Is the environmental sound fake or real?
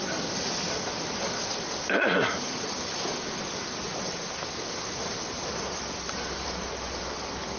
fake